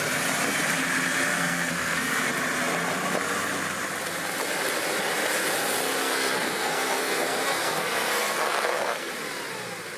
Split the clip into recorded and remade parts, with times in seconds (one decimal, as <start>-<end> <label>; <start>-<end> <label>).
0.0-1.3 recorded; 1.3-2.3 remade; 2.3-6.0 recorded; 6.0-9.1 remade; 9.1-10.0 recorded